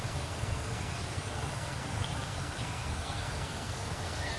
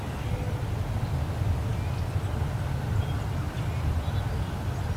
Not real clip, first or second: first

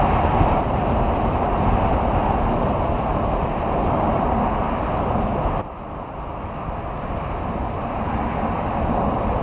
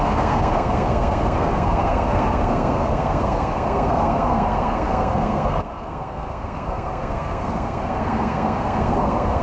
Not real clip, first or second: second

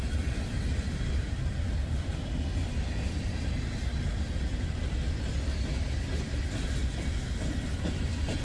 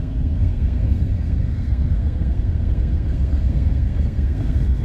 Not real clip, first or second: second